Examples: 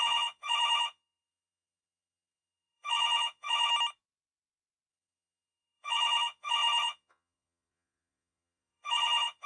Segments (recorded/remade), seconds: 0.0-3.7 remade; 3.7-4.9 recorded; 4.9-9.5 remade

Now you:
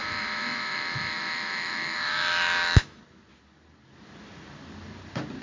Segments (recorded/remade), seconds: 0.0-3.0 remade; 3.0-5.4 recorded